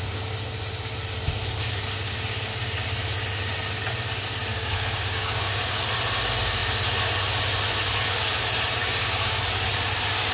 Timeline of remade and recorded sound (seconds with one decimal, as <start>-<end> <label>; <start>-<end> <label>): 0.0-4.5 recorded; 4.5-5.8 remade; 5.8-8.8 recorded; 8.8-9.4 remade; 9.4-10.3 recorded